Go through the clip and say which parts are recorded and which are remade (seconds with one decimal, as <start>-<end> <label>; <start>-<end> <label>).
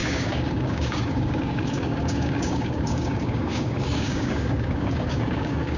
0.0-5.8 remade